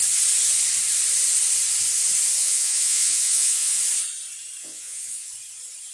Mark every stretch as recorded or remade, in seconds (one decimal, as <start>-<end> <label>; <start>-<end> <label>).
0.0-2.4 recorded; 2.4-3.8 remade; 3.8-4.6 recorded; 4.6-5.3 remade; 5.3-5.9 recorded